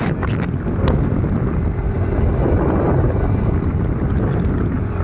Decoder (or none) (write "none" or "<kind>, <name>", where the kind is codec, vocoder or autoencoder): none